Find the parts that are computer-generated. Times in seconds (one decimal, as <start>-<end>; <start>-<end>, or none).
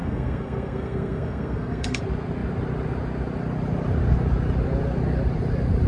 0.0-2.0